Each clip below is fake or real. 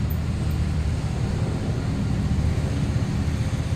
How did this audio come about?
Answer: real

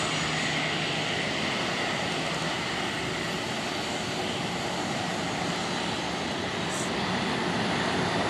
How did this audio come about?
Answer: real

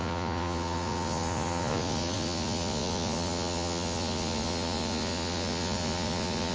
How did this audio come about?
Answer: fake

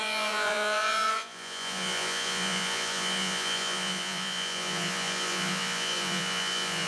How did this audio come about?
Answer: fake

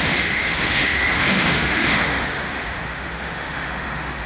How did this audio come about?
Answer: fake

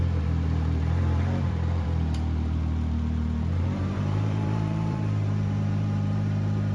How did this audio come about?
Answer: fake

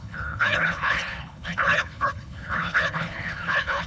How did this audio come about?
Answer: fake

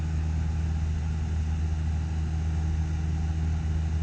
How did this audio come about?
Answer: real